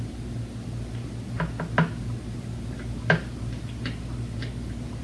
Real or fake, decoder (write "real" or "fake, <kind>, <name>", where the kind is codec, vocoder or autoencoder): real